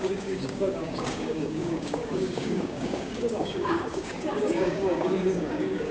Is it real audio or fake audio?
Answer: fake